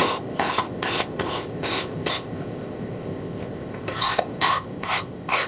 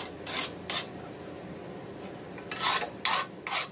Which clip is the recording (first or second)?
second